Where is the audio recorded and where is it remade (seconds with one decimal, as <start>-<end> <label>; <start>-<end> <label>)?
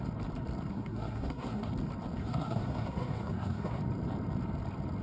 0.0-0.7 recorded; 0.7-1.7 remade; 1.7-2.2 recorded; 2.2-3.8 remade; 3.8-5.0 recorded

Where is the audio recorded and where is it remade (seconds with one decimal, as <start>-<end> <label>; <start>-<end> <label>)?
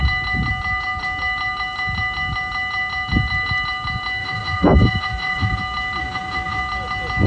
0.0-4.2 recorded; 4.2-5.6 remade; 5.6-6.0 recorded; 6.0-6.6 remade; 6.6-7.3 recorded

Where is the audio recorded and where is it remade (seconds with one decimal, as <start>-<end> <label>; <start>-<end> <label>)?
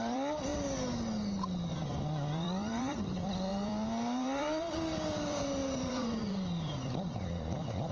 0.0-0.5 remade; 0.5-1.7 recorded; 1.7-7.9 remade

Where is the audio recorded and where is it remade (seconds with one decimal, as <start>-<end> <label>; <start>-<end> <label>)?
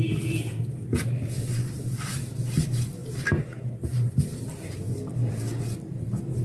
0.0-6.4 recorded